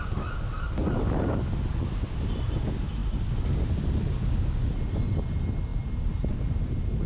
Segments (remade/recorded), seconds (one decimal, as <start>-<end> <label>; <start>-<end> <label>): 0.0-7.1 recorded